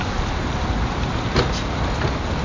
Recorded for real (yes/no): yes